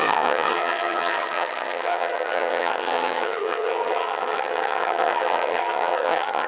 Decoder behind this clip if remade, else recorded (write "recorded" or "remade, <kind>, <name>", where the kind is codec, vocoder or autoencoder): remade, vocoder, HiFi-GAN